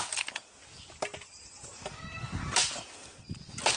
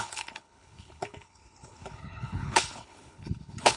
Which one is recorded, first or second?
first